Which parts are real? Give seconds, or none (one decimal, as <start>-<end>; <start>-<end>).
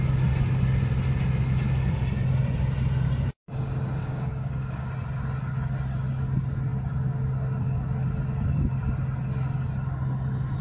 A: 0.0-4.0; 4.9-10.6